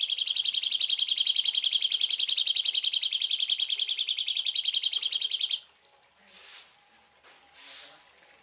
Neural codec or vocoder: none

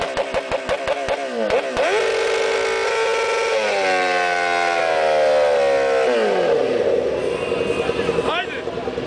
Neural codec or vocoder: none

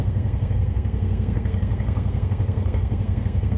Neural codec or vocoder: codec, SNAC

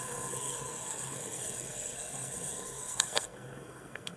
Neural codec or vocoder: codec, SNAC